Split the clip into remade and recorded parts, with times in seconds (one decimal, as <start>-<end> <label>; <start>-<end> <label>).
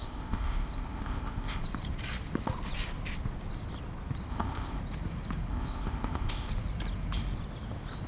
0.0-1.6 remade; 1.6-4.3 recorded; 4.3-4.8 remade; 4.8-5.5 recorded; 5.5-6.5 remade; 6.5-8.1 recorded